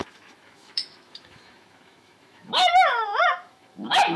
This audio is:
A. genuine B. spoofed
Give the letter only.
B